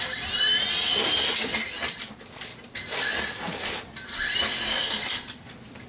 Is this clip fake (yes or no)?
no